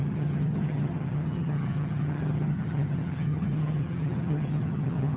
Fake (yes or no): yes